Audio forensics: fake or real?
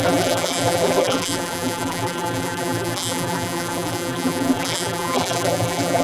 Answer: fake